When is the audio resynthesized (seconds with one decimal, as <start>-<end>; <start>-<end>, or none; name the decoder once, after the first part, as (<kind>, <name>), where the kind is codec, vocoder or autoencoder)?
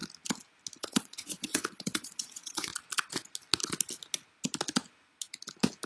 0.8-2.7 (vocoder, WaveNeXt)